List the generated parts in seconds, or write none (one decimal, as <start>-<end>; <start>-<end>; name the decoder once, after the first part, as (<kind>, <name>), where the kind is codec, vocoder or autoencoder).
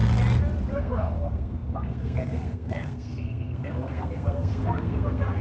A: 0.7-5.4 (codec, SNAC)